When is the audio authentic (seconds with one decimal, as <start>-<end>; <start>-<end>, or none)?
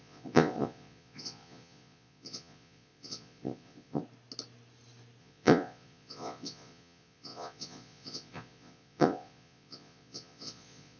4.0-5.2